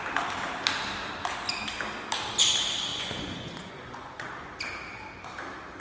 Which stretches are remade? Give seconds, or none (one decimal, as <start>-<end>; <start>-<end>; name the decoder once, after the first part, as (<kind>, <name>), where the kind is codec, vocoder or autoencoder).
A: 2.9-4.5 (vocoder, Vocos)